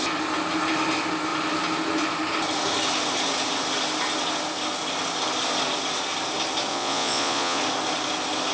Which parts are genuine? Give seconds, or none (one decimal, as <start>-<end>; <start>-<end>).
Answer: 0.0-6.7; 7.6-8.5

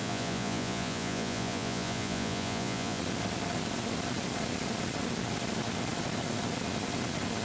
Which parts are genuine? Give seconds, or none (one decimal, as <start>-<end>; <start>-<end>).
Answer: 3.0-7.4

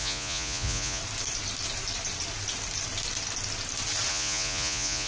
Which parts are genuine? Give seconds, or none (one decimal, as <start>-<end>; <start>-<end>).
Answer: 1.0-4.1

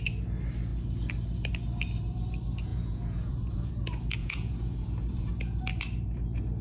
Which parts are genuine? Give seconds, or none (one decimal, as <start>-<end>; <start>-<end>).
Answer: 0.0-2.7; 3.7-4.2; 5.3-6.6

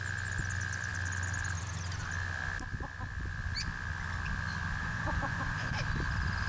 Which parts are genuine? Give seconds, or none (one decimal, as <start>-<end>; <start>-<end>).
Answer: 0.0-4.8; 5.8-6.5

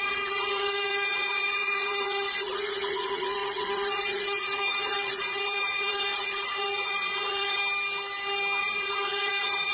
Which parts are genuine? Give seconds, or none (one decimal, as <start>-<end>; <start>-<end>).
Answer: 7.6-8.6